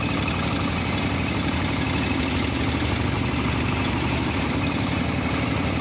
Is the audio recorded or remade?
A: remade